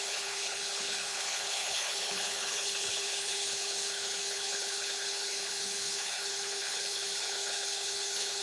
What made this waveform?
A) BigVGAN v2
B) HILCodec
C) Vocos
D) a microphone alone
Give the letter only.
B